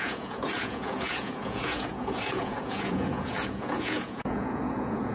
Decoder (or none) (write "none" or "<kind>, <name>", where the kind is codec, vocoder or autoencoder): vocoder, Vocos